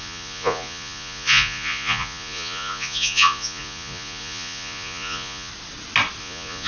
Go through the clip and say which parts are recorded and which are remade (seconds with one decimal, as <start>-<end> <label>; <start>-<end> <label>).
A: 0.0-5.5 remade; 5.5-6.2 recorded; 6.2-6.7 remade